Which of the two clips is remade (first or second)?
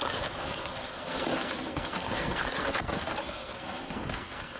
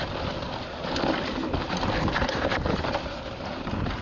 first